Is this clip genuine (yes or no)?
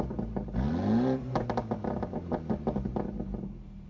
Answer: yes